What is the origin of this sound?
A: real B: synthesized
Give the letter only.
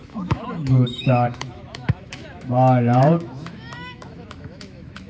B